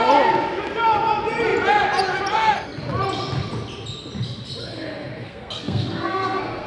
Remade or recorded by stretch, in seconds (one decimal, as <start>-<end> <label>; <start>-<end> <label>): 0.0-4.6 recorded; 4.6-6.7 remade